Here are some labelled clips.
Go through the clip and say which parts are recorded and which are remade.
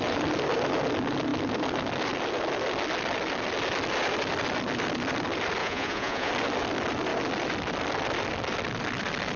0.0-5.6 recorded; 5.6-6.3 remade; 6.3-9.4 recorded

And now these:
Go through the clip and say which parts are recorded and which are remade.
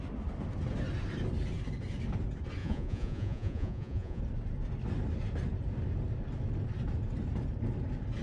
0.0-2.6 recorded; 2.6-4.2 remade; 4.2-8.2 recorded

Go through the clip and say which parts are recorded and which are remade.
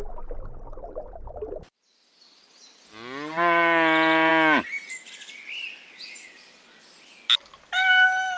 0.0-8.4 recorded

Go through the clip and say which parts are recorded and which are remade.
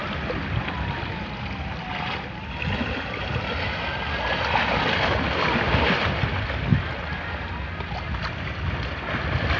0.0-9.6 recorded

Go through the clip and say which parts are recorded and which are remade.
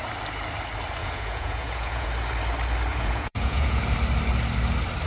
0.0-1.0 recorded; 1.0-2.1 remade; 2.1-2.9 recorded; 2.9-3.8 remade; 3.8-5.1 recorded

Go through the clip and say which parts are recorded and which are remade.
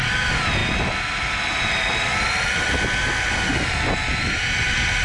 0.0-5.0 recorded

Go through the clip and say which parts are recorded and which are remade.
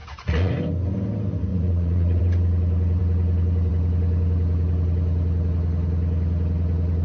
0.0-0.5 remade; 0.5-1.5 recorded; 1.5-2.2 remade; 2.2-7.0 recorded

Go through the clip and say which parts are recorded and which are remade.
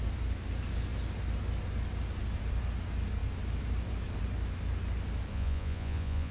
0.0-5.3 recorded; 5.3-6.3 remade